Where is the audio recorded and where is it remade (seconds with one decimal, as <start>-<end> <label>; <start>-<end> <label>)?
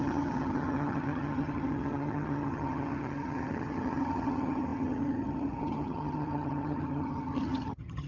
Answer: 0.0-8.1 remade